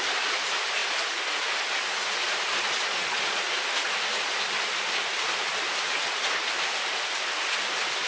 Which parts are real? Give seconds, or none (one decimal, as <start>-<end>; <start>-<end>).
0.0-2.9; 3.4-8.1